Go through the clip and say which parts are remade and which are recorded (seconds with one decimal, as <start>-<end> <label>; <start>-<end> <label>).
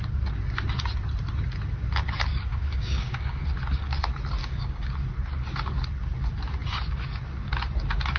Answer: 0.0-2.5 recorded; 2.5-3.4 remade; 3.4-4.4 recorded; 4.4-4.9 remade; 4.9-8.2 recorded